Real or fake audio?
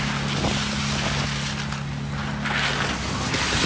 real